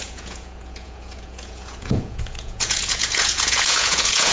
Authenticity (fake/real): fake